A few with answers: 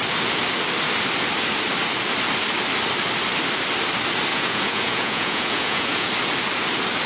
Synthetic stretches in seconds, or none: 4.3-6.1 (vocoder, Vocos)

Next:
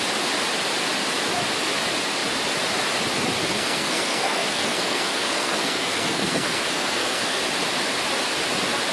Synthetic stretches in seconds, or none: 3.5-7.4 (codec, SNAC)

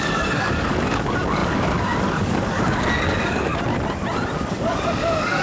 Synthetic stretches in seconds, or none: 0.0-3.5 (codec, DAC); 4.5-5.4

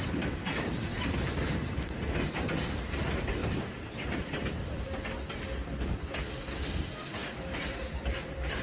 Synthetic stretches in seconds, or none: 0.9-2.0 (vocoder, BigVGAN v2); 3.4-4.2; 7.2-8.6

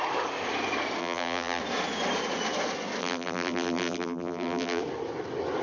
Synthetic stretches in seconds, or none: 1.0-1.6 (vocoder, BigVGAN v2); 3.0-4.8

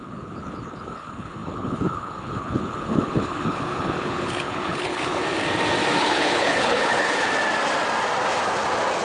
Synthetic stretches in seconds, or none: 0.0-5.2 (codec, HILCodec); 6.0-7.3

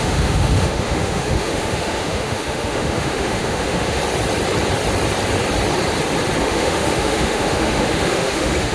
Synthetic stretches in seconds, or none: 0.0-4.0 (autoencoder, DAC-VAE); 6.4-8.7